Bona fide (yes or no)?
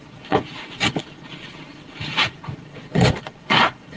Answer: no